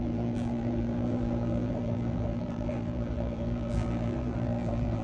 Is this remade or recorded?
remade